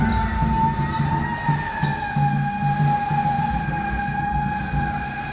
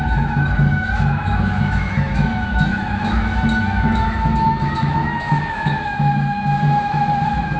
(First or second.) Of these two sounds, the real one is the first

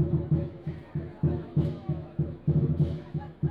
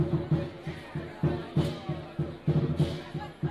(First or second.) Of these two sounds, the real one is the second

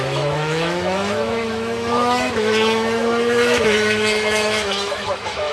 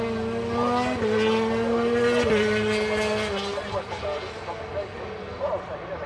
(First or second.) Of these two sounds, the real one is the second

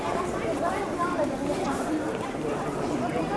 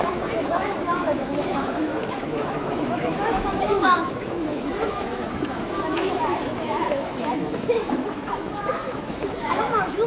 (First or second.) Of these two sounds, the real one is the first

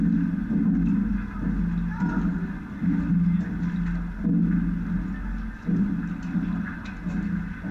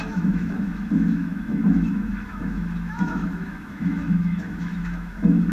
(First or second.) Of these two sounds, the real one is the first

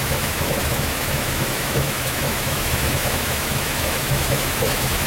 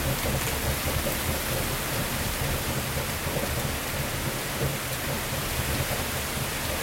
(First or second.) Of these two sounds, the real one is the second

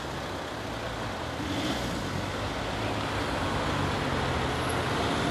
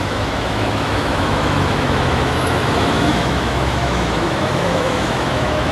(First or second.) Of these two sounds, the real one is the first